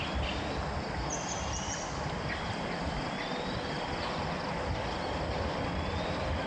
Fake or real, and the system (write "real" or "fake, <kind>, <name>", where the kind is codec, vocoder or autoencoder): real